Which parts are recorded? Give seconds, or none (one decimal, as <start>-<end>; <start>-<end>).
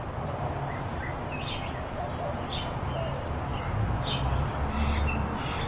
0.0-5.7